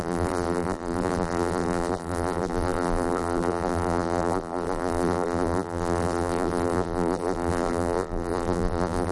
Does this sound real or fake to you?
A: fake